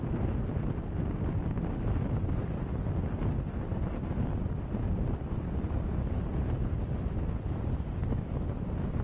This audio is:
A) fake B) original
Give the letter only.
B